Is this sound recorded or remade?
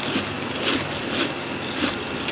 recorded